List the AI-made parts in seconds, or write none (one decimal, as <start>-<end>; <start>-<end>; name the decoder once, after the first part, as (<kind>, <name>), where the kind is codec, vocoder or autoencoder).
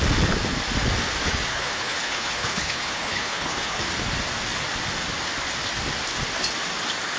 1.2-3.8 (codec, HILCodec)